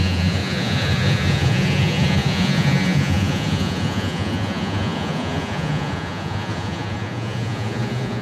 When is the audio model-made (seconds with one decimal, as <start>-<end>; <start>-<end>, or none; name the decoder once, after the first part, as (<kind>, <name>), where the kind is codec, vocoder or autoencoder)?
0.0-8.2 (vocoder, Vocos)